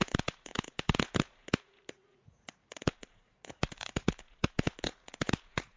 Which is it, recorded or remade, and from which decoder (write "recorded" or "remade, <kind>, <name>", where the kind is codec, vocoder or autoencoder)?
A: remade, vocoder, Vocos